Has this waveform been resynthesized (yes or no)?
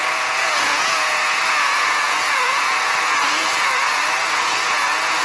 yes